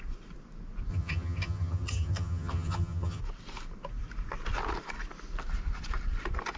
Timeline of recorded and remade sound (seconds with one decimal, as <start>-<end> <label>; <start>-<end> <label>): 0.0-0.9 recorded; 0.9-3.2 remade; 3.2-6.6 recorded